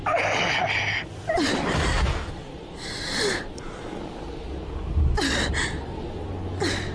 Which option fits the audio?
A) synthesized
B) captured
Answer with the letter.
B